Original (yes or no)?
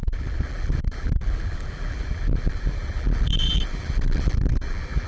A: no